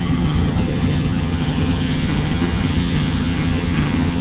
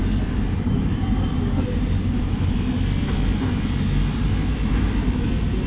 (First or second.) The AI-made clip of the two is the first